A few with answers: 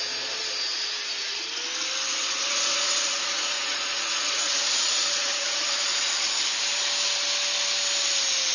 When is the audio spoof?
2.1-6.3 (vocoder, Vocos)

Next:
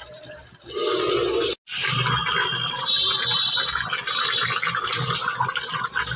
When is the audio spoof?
none

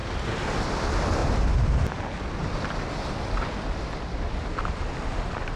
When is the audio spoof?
0.6-1.2 (vocoder, BigVGAN v2); 4.0-5.6

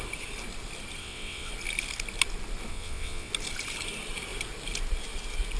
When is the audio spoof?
1.0-1.5 (vocoder, WaveNeXt); 2.7-3.3